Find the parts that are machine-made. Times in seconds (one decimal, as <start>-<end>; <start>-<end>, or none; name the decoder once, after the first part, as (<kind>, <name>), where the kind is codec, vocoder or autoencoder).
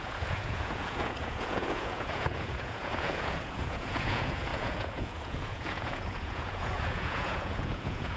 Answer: 0.0-8.2 (vocoder, Vocos)